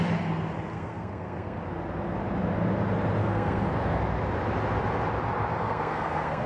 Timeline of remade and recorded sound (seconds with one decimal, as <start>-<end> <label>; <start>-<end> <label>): 0.0-0.7 recorded; 0.7-1.6 remade; 1.6-3.2 recorded; 3.2-3.7 remade; 3.7-5.5 recorded; 5.5-6.5 remade